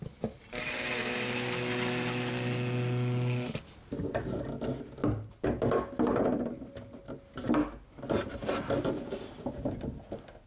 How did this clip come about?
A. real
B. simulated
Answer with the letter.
A